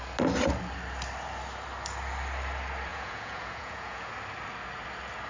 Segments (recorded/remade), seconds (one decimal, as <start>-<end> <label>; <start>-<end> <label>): 0.0-2.9 recorded; 2.9-4.1 remade; 4.1-5.3 recorded